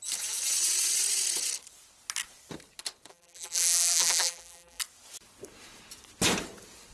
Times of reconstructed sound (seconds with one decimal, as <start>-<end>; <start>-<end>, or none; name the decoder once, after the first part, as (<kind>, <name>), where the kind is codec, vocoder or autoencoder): 3.1-4.8 (vocoder, BigVGAN v2)